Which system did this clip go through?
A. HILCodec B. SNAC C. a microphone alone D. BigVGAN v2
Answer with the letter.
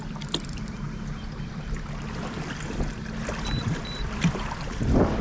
D